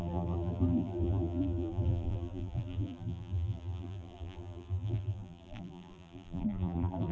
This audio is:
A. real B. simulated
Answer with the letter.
B